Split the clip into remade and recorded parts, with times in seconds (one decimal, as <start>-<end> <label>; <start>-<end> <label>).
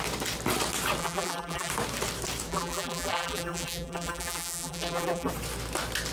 0.0-1.0 recorded; 1.0-1.7 remade; 1.7-2.5 recorded; 2.5-5.3 remade; 5.3-6.1 recorded